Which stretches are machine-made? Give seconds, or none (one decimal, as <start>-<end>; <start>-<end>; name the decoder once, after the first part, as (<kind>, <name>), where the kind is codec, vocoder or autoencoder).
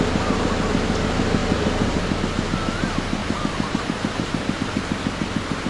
1.4-2.2 (vocoder, BigVGAN v2); 3.2-4.6